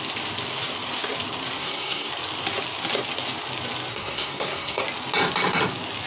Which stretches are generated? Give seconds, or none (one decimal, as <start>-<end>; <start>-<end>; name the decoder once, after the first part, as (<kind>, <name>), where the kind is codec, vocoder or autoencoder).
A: 1.6-2.1 (codec, SNAC); 3.9-4.8